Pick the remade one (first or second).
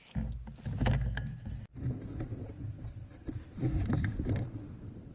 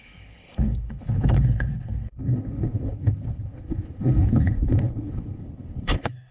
second